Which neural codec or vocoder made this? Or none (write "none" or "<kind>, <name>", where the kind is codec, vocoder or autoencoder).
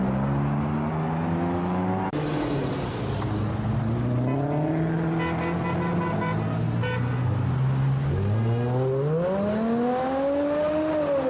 none